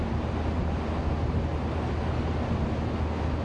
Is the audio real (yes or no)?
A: yes